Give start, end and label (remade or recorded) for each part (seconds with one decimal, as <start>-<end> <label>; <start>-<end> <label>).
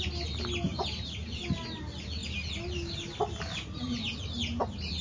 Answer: 0.0-5.0 recorded